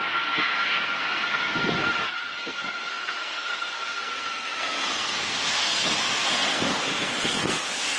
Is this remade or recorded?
remade